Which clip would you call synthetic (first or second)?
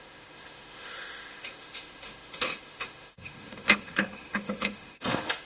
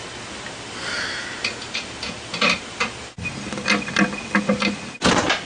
first